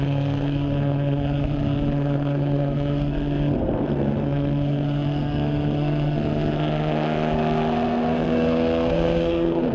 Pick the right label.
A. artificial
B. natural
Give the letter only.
A